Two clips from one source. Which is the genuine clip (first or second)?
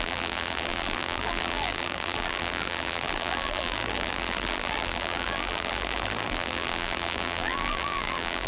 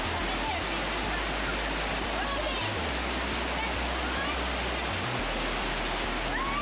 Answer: second